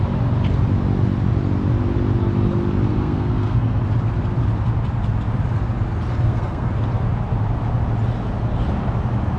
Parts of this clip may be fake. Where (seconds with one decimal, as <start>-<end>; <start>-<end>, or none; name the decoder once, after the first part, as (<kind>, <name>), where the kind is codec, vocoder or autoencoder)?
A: 2.9-3.8 (codec, SNAC); 6.1-6.7